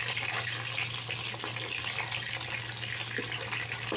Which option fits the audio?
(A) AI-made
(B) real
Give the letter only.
A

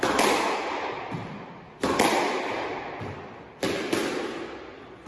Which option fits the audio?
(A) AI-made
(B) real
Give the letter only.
B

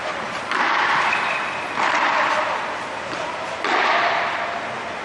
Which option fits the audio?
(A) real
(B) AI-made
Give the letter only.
B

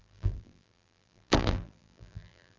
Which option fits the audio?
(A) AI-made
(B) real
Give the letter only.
A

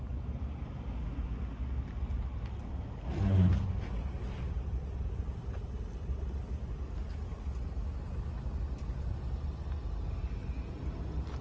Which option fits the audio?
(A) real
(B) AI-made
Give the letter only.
A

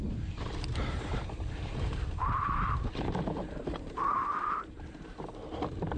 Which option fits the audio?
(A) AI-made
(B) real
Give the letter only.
A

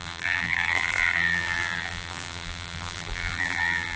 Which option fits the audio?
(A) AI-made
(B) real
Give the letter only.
A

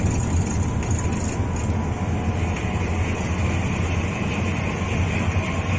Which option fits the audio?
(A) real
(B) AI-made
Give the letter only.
A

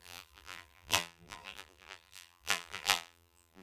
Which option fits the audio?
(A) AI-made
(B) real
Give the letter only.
A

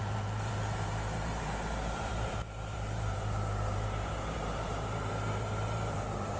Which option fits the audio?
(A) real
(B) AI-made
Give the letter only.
B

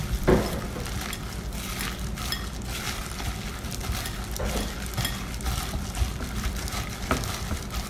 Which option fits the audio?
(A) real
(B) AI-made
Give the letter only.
A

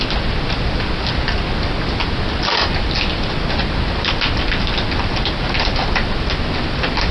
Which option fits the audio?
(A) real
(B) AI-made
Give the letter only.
A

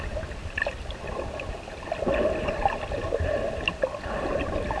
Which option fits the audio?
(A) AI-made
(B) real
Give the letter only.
B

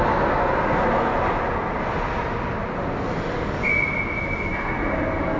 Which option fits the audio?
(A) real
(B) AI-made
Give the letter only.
A